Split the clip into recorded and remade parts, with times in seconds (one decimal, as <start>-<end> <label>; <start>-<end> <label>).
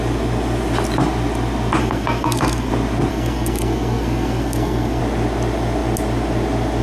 0.0-1.8 recorded; 1.8-2.7 remade; 2.7-3.1 recorded; 3.1-5.0 remade; 5.0-6.8 recorded